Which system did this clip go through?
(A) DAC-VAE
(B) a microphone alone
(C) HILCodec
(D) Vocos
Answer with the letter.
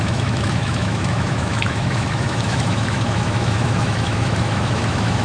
A